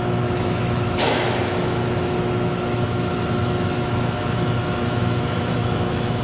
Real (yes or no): no